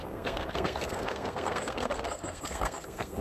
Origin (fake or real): fake